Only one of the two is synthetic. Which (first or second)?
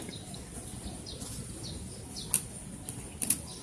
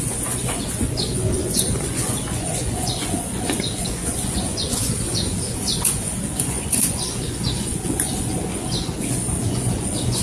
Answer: second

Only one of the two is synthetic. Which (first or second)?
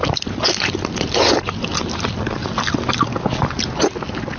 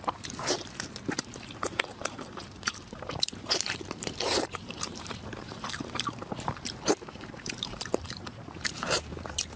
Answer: second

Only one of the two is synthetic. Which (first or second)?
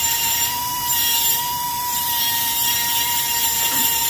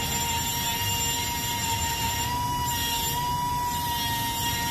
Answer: first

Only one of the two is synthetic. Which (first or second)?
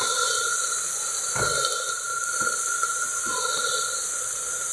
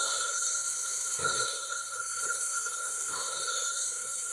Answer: second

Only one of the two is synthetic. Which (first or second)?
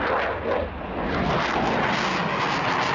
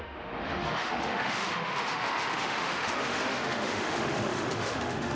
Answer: second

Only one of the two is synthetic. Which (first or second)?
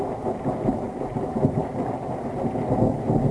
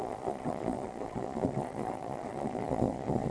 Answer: second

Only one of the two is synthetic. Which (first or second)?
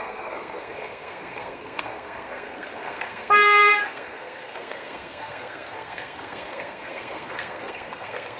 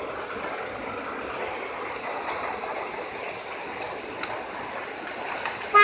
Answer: first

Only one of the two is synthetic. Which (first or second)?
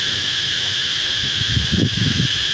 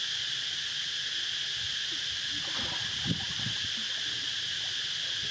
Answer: first